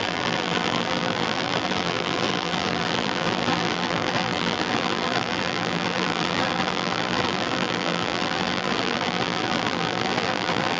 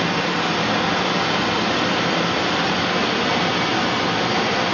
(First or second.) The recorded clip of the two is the second